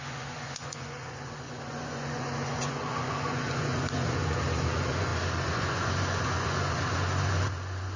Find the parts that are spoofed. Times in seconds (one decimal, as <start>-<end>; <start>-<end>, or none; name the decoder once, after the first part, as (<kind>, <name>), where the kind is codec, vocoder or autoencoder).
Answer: 0.0-8.0 (vocoder, Vocos)